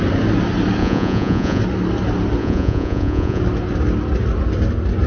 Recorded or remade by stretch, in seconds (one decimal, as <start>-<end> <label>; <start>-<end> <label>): 0.0-0.8 recorded; 0.8-1.6 remade; 1.6-2.4 recorded; 2.4-3.4 remade; 3.4-5.1 recorded